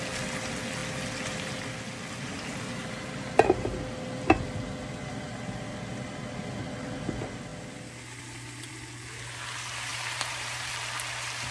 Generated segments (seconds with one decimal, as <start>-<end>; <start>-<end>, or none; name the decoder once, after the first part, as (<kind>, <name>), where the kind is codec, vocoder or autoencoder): 9.9-10.7 (vocoder, BigVGAN v2)